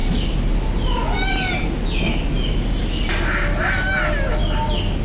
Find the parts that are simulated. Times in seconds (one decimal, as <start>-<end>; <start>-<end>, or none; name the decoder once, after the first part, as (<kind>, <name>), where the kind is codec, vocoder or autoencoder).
none